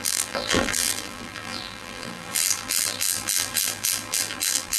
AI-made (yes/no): yes